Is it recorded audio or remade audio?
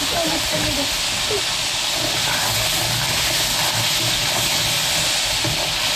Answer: recorded